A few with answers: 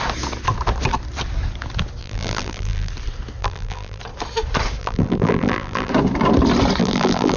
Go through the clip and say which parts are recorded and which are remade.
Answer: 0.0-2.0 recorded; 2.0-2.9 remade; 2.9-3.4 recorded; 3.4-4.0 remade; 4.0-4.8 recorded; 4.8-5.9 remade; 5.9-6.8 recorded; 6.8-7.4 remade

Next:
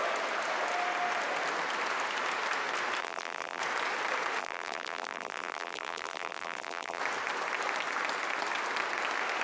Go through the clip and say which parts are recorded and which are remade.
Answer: 0.0-3.0 recorded; 3.0-3.6 remade; 3.6-4.4 recorded; 4.4-7.0 remade; 7.0-9.4 recorded

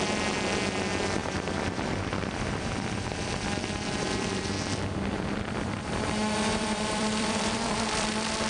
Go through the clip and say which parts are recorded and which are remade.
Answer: 0.0-1.2 recorded; 1.2-6.0 remade; 6.0-6.5 recorded; 6.5-8.1 remade; 8.1-8.5 recorded

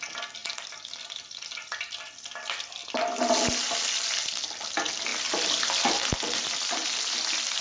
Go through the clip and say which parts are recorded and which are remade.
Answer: 0.0-7.6 recorded

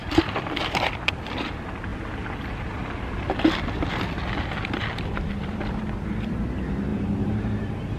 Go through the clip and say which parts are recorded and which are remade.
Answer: 0.0-0.6 remade; 0.6-6.9 recorded; 6.9-8.0 remade

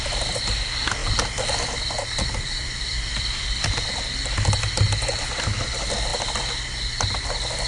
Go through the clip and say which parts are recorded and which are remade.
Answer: 0.0-1.0 recorded; 1.0-4.6 remade; 4.6-7.7 recorded

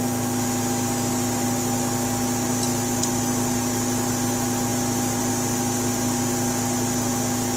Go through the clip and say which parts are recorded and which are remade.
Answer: 0.0-2.7 recorded; 2.7-4.1 remade; 4.1-4.7 recorded; 4.7-5.3 remade; 5.3-7.6 recorded